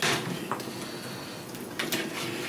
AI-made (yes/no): no